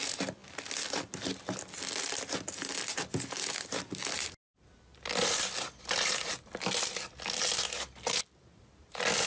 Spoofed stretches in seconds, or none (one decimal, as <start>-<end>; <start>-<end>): none